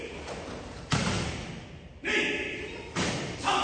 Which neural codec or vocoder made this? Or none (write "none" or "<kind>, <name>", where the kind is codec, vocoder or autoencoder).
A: vocoder, BigVGAN v2